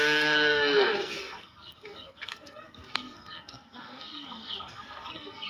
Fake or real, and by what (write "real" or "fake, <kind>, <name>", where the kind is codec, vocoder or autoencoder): fake, codec, SNAC